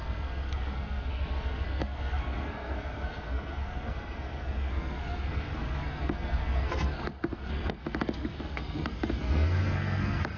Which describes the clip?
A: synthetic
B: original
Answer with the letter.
A